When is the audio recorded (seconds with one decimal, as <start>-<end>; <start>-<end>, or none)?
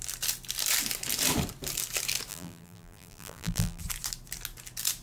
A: 0.0-2.3; 3.8-5.0